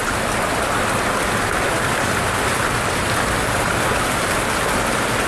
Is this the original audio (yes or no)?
yes